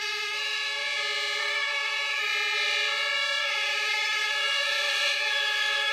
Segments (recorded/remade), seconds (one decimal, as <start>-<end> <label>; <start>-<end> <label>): 0.0-0.8 remade; 0.8-1.4 recorded; 1.4-2.3 remade; 2.3-3.4 recorded; 3.4-5.9 remade